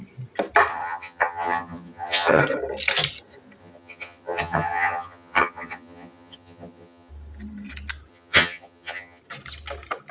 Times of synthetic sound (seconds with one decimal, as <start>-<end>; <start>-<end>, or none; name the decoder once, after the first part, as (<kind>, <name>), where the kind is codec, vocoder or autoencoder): 0.7-2.4 (vocoder, HiFi-GAN); 3.6-7.1; 8.1-9.2